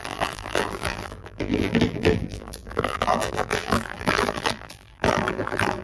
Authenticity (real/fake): fake